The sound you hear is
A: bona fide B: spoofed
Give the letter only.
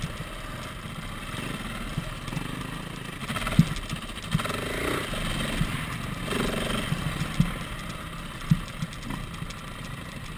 A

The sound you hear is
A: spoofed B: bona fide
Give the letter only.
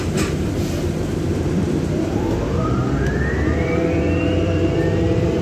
A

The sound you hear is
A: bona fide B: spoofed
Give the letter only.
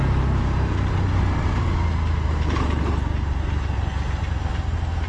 A